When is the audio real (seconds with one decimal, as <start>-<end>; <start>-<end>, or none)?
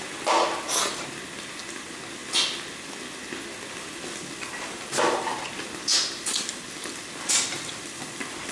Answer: 0.0-8.5